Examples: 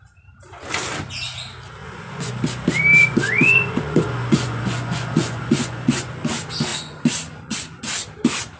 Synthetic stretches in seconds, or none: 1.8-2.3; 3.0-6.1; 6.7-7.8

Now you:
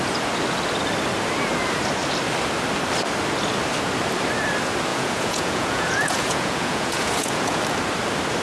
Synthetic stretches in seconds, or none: 4.9-7.6

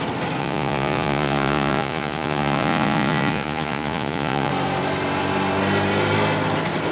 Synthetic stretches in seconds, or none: 0.4-4.5

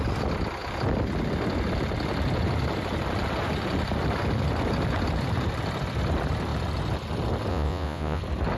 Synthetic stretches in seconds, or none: 7.5-8.2

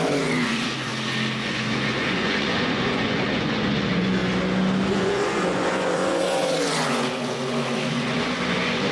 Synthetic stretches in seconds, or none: 0.0-0.9; 1.4-4.2; 4.9-8.9

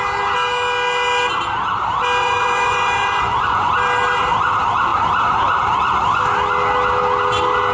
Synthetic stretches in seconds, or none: 2.2-3.7